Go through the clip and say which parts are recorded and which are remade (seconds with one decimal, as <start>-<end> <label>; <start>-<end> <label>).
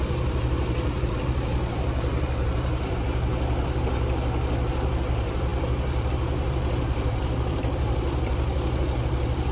0.0-3.3 remade; 3.3-4.7 recorded; 4.7-9.5 remade